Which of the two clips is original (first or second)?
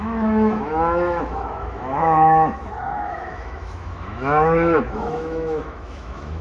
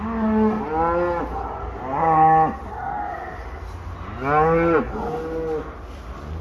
second